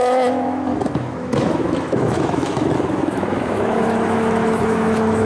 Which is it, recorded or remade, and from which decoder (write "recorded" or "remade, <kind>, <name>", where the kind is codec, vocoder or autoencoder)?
remade, autoencoder, DAC-VAE